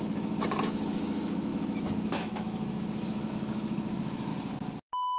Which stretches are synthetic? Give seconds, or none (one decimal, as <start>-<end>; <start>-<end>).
0.0-4.3